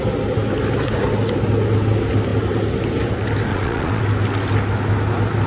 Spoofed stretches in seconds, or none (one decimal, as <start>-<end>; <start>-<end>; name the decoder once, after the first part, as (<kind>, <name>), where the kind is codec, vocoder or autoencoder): 3.5-4.0 (vocoder, Vocos)